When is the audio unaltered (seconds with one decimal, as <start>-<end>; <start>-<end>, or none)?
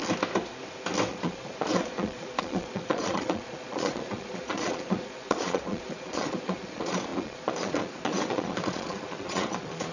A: 0.0-1.1